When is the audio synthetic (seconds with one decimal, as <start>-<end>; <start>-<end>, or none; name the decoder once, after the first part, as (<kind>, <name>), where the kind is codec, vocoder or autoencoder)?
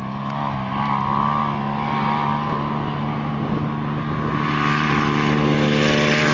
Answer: none